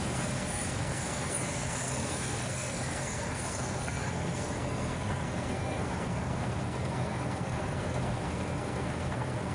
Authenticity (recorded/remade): remade